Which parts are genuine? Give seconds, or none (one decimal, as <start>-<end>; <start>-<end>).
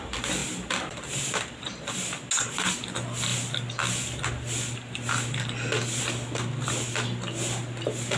0.0-0.4; 2.0-8.2